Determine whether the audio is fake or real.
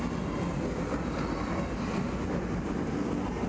real